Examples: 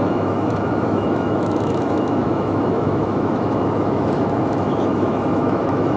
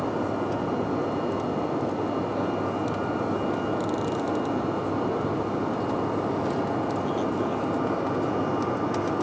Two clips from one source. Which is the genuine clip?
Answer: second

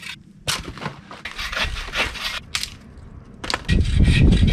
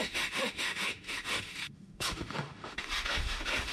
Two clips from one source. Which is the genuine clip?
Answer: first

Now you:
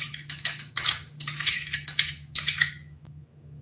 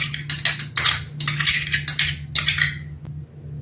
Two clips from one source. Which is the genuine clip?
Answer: second